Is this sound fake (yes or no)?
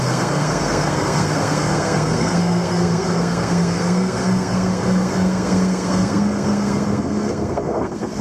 yes